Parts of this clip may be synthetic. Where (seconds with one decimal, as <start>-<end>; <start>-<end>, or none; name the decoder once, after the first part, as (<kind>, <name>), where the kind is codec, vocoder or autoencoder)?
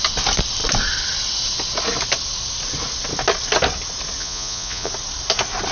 4.2-4.9 (vocoder, Vocos)